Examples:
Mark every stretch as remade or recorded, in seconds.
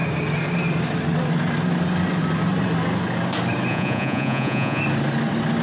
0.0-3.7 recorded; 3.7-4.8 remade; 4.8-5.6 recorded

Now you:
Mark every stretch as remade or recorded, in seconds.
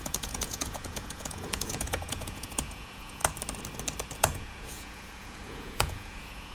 0.0-3.2 remade; 3.2-4.2 recorded; 4.2-6.5 remade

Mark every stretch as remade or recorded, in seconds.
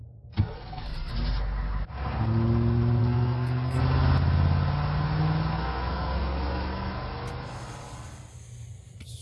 0.0-1.1 remade; 1.1-3.0 recorded; 3.0-3.8 remade; 3.8-5.5 recorded; 5.5-6.9 remade; 6.9-9.2 recorded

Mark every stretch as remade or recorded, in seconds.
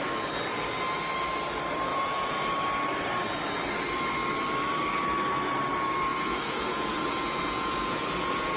0.0-1.9 recorded; 1.9-2.4 remade; 2.4-6.1 recorded; 6.1-8.6 remade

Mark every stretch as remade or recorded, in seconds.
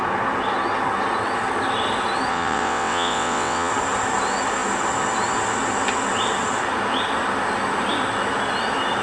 0.0-2.3 recorded; 2.3-3.7 remade; 3.7-9.0 recorded